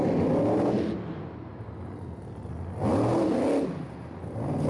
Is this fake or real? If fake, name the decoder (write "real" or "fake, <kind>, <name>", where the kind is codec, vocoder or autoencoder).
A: real